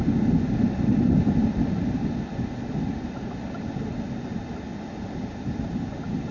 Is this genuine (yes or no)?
yes